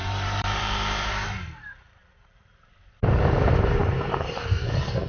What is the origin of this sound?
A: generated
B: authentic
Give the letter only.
A